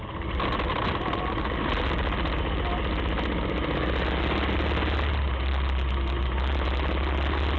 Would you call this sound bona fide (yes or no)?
yes